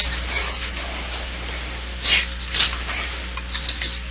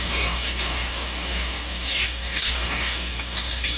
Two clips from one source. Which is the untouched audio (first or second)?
first